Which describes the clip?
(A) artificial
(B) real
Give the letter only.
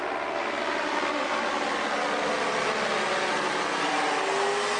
B